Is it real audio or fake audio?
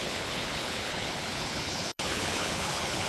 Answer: fake